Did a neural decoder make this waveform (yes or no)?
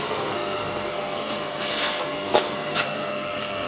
yes